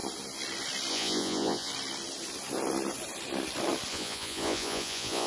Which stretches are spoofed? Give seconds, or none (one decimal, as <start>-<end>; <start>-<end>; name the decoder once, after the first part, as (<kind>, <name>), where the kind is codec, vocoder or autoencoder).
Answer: 0.9-1.7 (vocoder, Vocos); 3.9-5.3